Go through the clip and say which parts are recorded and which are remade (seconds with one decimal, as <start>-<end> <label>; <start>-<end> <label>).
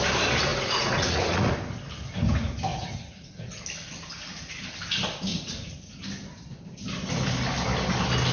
0.0-0.5 recorded; 0.5-1.5 remade; 1.5-2.7 recorded; 2.7-3.6 remade; 3.6-5.3 recorded; 5.3-5.9 remade; 5.9-8.3 recorded